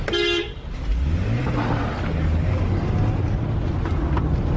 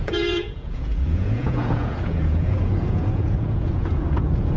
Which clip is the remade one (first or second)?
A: second